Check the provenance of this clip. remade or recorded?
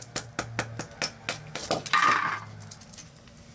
recorded